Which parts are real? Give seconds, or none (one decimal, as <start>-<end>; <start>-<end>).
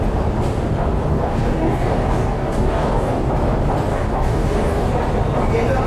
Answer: 0.0-1.1; 3.3-3.9; 4.9-5.9